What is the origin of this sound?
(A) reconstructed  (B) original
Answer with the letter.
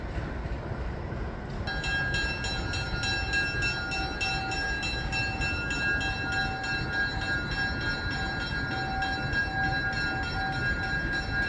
B